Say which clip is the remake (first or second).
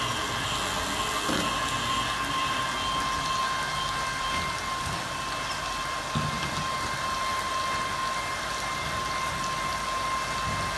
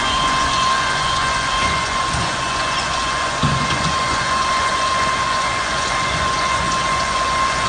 second